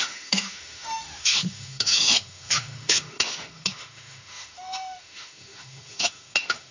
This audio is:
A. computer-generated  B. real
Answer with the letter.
A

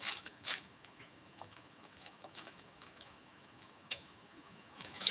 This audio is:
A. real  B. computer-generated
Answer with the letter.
B